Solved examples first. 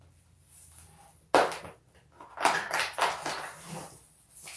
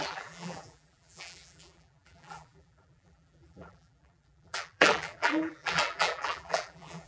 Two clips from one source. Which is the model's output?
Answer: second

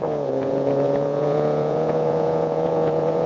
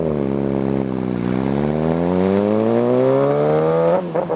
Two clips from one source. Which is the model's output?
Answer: first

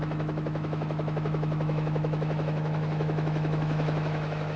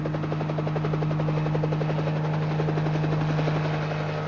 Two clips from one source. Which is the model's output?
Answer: first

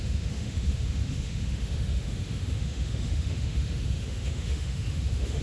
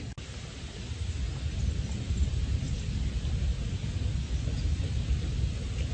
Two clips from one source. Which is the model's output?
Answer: first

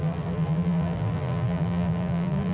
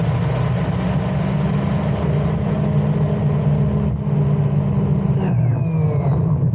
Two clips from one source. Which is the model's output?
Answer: first